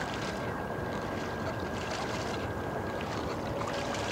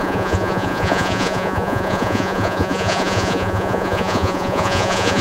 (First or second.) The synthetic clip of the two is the second